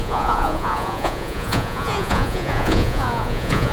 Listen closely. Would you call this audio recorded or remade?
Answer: remade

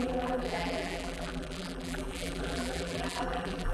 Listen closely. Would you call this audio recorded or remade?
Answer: remade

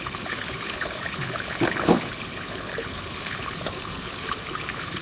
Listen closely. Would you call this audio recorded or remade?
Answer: remade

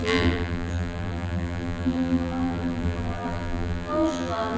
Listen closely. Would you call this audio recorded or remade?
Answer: remade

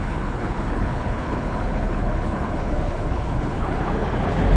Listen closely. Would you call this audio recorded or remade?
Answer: remade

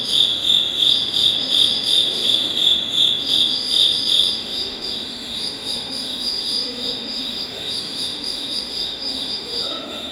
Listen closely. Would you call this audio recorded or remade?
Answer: remade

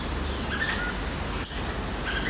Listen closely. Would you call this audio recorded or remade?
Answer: recorded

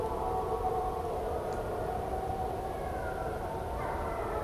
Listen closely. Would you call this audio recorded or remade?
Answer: recorded